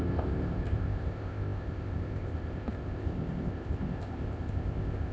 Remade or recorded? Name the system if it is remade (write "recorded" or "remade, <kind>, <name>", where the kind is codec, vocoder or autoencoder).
remade, codec, ZipCodec